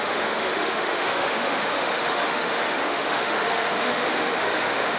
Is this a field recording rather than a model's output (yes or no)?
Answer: no